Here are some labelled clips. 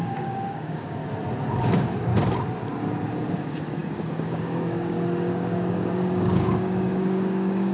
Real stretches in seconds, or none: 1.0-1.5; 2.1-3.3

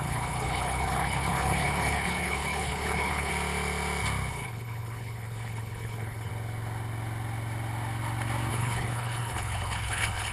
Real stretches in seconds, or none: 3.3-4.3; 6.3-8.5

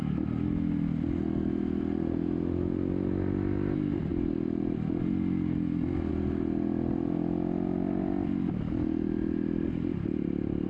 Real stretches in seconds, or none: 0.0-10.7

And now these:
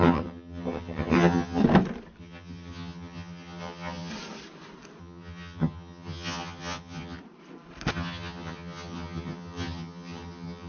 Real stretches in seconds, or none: 1.6-2.2; 4.1-5.0; 7.2-7.9